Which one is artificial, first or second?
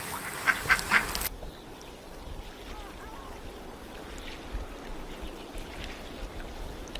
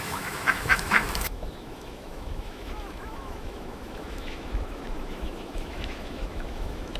second